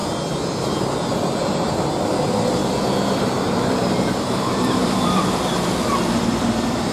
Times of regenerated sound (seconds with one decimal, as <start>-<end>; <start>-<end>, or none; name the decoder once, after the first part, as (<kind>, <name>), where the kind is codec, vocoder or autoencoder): 1.4-2.6 (vocoder, BigVGAN v2); 3.1-6.9